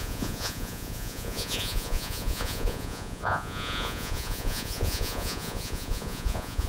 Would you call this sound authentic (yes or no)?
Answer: no